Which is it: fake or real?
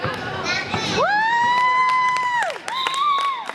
real